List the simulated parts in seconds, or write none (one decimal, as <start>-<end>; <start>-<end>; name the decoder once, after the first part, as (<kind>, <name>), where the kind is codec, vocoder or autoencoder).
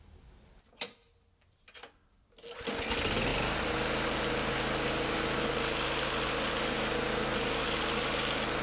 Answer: none